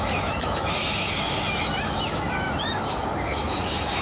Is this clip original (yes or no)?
no